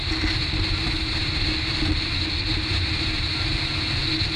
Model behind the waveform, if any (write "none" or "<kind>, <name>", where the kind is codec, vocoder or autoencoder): none